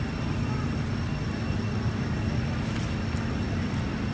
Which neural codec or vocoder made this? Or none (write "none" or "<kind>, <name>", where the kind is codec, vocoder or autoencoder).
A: none